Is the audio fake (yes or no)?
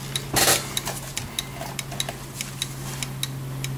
no